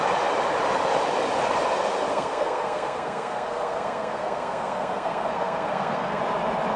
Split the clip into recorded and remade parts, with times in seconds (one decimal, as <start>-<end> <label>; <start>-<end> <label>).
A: 0.0-2.1 recorded; 2.1-6.2 remade; 6.2-6.8 recorded